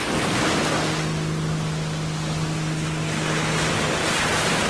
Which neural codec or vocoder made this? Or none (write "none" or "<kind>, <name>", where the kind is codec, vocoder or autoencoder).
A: none